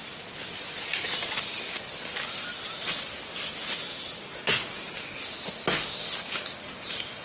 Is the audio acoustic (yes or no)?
yes